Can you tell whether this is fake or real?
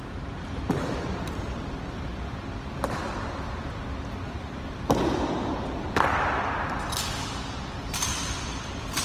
real